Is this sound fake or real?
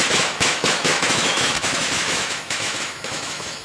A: fake